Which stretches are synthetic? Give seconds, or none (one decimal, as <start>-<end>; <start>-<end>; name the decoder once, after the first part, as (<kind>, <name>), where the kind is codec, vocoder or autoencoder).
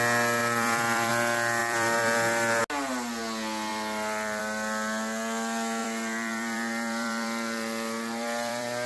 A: 0.4-1.1 (vocoder, BigVGAN v2); 1.6-2.6; 3.7-4.4; 5.8-8.9